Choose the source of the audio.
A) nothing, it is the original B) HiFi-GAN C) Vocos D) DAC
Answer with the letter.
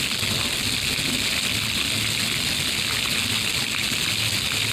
A